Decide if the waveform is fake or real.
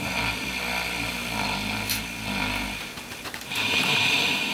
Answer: real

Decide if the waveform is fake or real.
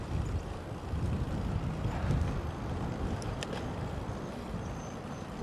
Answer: fake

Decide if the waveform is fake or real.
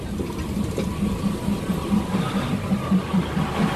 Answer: real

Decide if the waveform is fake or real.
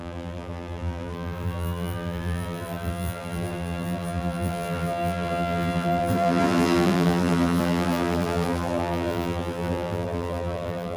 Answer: fake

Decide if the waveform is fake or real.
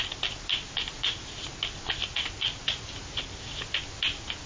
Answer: real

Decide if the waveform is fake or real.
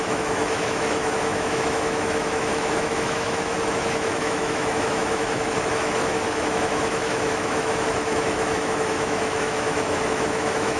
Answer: fake